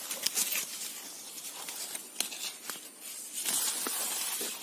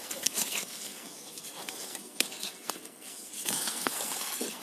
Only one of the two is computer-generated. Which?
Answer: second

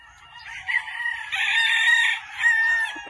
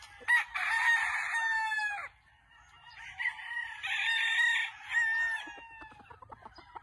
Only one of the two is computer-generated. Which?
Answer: first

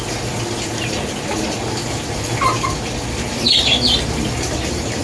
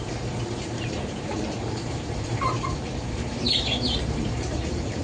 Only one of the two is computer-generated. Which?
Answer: second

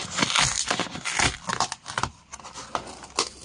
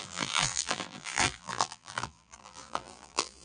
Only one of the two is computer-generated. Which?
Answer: second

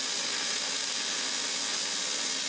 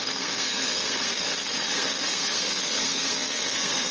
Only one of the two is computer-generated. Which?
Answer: second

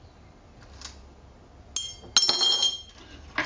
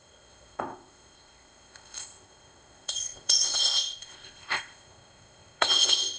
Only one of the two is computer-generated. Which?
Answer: second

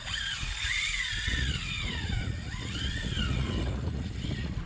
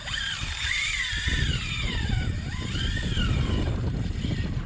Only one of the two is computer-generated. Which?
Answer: first